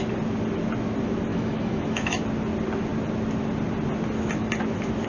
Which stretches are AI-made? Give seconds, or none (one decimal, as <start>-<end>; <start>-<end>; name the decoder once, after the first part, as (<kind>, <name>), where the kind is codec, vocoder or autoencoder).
1.3-2.2 (autoencoder, DAC-VAE)